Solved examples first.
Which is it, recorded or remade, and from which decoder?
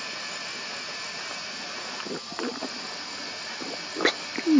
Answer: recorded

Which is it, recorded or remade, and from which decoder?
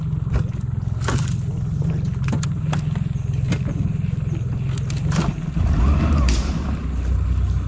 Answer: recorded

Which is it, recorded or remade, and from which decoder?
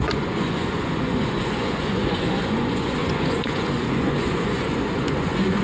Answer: remade, vocoder, Vocos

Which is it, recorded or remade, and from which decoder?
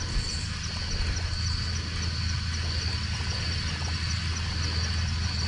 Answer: recorded